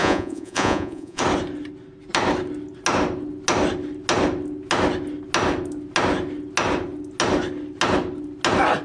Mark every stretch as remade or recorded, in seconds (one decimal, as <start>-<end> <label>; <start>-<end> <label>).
0.0-1.2 remade; 1.2-8.8 recorded